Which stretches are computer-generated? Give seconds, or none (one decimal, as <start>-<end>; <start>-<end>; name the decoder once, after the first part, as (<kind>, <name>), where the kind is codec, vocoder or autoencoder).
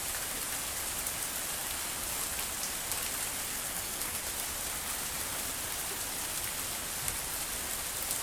3.5-4.2 (codec, SNAC)